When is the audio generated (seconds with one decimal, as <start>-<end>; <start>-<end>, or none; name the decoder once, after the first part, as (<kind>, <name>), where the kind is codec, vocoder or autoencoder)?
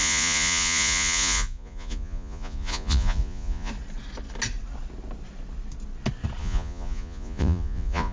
0.0-3.7 (vocoder, Vocos); 6.4-8.1